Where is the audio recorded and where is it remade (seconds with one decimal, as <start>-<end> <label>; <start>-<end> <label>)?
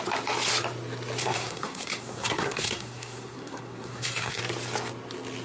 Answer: 0.0-1.2 recorded; 1.2-4.4 remade; 4.4-5.4 recorded